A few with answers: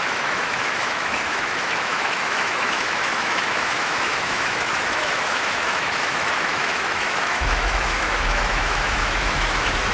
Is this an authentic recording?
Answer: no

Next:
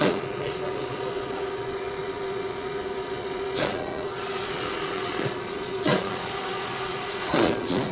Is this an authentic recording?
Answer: no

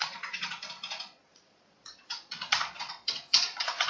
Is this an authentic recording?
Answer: no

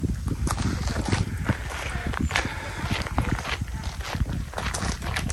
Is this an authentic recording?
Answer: yes